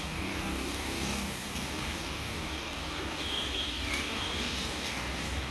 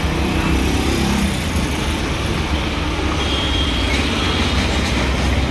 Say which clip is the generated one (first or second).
first